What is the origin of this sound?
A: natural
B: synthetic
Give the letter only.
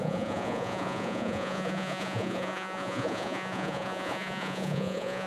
B